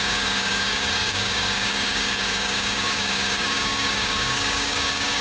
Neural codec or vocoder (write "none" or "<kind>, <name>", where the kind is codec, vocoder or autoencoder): codec, DAC